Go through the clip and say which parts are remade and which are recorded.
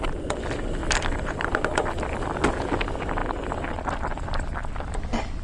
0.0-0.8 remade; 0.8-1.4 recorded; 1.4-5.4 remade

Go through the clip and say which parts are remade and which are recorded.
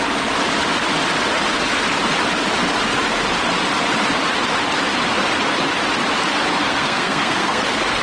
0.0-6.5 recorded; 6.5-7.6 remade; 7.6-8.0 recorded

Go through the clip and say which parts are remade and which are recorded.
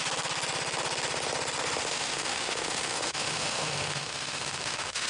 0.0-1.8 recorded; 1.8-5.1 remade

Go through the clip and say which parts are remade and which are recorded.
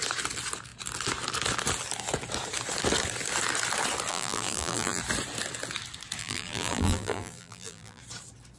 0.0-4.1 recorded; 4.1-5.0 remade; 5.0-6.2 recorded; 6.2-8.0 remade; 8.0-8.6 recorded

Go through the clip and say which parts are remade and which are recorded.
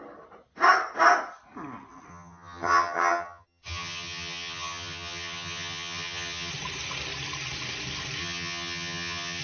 0.0-2.1 recorded; 2.1-6.5 remade; 6.5-8.2 recorded; 8.2-9.4 remade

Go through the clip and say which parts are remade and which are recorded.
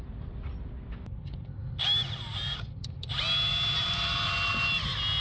0.0-3.5 recorded; 3.5-4.3 remade; 4.3-5.2 recorded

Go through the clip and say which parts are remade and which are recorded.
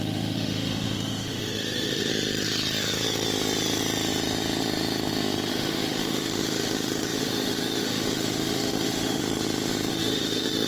0.0-2.1 remade; 2.1-5.5 recorded; 5.5-9.2 remade; 9.2-9.9 recorded; 9.9-10.7 remade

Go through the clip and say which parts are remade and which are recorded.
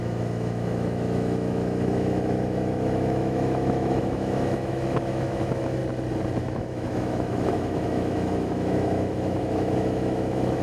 0.0-5.8 remade; 5.8-6.4 recorded; 6.4-10.6 remade